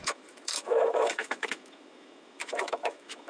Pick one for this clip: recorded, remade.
remade